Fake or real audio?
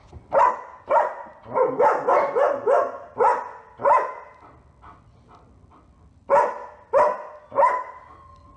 real